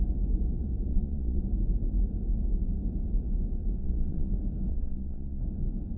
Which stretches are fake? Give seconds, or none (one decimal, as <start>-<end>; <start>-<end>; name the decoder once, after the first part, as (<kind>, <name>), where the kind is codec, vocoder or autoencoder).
0.9-1.4 (vocoder, Vocos); 3.8-4.3; 4.7-5.4